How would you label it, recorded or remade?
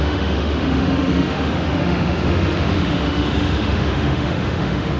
remade